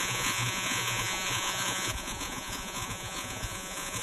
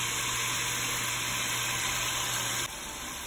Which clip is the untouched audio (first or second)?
second